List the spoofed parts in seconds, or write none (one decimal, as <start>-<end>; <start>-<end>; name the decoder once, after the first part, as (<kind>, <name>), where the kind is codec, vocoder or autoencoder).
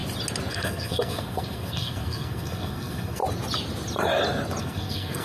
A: 0.5-3.2 (codec, SNAC); 4.6-5.2